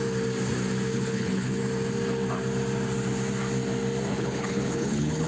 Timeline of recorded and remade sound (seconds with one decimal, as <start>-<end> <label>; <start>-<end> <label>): 0.0-0.9 recorded; 0.9-1.6 remade; 1.6-4.1 recorded; 4.1-5.3 remade